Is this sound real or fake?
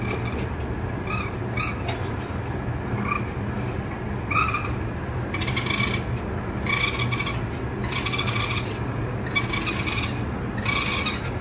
real